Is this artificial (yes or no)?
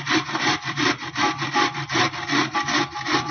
no